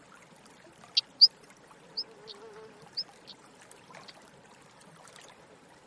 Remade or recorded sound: recorded